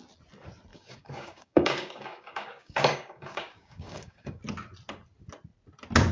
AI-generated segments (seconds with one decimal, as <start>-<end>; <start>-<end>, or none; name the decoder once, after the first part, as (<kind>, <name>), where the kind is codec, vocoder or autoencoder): 0.7-4.4 (codec, DAC)